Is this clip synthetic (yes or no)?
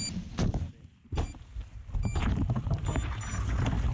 no